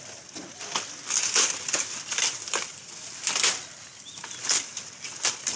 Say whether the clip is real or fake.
real